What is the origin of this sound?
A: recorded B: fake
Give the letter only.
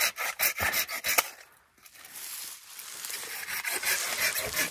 A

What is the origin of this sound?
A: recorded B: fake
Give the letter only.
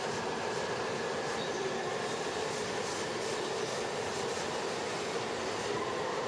A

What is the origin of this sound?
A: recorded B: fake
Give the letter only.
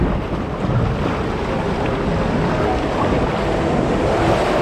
A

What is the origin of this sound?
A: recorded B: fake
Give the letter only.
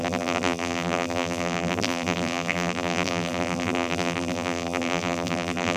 B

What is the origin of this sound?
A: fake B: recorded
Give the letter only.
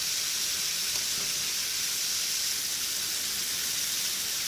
B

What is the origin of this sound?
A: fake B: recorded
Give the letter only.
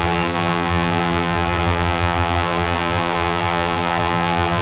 A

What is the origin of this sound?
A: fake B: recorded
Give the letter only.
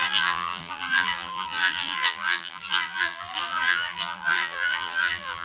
A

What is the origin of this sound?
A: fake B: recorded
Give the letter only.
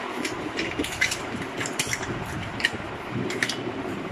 A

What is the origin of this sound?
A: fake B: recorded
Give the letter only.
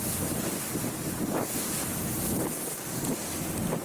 B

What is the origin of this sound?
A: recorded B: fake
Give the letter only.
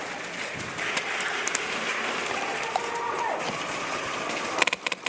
A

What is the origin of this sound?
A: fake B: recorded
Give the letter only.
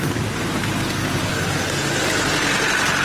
B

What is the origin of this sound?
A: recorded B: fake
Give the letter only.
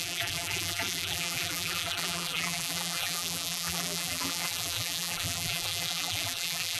B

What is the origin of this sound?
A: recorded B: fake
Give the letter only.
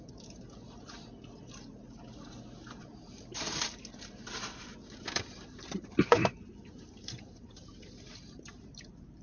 B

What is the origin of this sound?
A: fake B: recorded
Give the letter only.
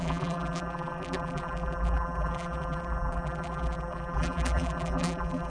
A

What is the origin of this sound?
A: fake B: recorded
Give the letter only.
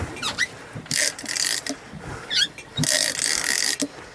B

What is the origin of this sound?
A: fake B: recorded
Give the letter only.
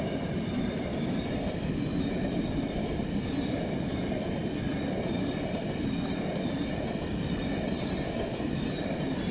A